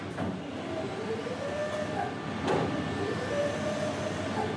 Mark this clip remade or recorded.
recorded